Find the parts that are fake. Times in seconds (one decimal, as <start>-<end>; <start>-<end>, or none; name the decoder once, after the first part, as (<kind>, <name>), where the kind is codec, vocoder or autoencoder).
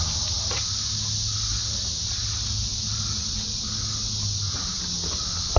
none